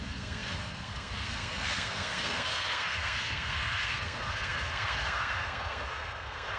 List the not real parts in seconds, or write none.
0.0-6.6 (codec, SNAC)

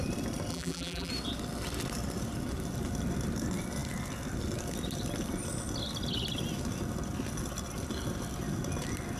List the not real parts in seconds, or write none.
0.5-1.1 (vocoder, BigVGAN v2)